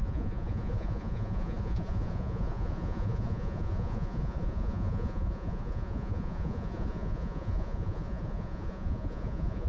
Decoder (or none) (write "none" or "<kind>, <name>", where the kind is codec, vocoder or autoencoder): vocoder, Vocos